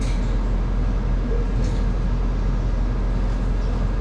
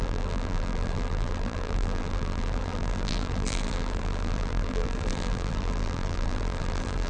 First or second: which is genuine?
first